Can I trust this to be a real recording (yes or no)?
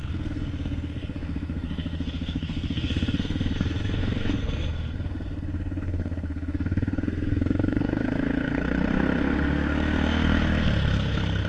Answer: no